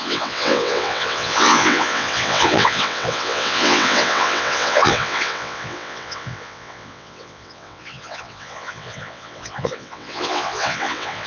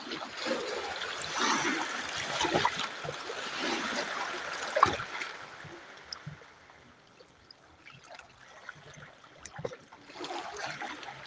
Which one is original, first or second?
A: second